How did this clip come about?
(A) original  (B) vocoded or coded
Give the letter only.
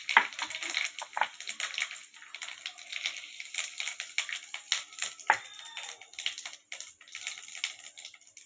A